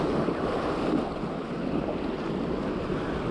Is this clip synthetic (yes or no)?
no